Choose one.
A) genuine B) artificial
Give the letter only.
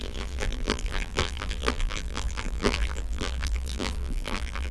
B